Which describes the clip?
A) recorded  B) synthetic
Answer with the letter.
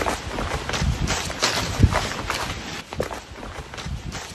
A